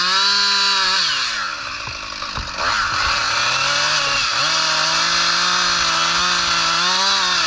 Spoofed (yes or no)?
no